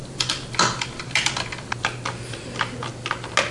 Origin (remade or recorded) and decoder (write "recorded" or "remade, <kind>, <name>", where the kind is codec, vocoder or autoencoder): recorded